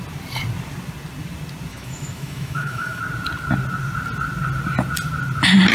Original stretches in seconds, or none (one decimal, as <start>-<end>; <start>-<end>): 0.0-1.7; 3.0-5.7